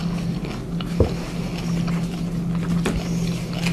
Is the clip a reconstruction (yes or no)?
no